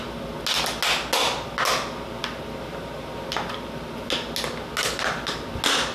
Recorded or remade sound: recorded